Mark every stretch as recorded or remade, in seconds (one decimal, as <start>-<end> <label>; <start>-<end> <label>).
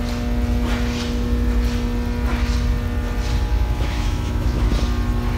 0.0-3.5 recorded; 3.5-4.7 remade; 4.7-5.4 recorded